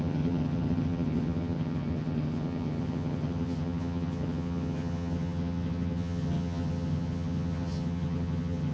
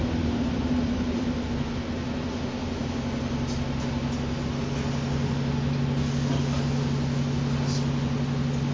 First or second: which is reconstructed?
first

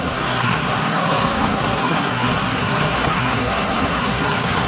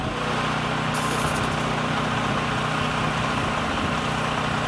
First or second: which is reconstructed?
first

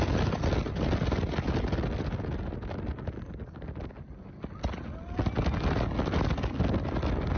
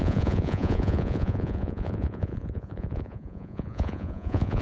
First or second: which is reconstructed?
second